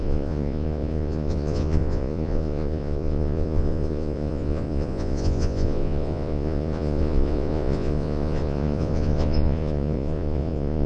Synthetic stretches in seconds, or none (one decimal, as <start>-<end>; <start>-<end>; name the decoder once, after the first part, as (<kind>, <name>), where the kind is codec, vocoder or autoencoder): 0.0-10.9 (vocoder, Vocos)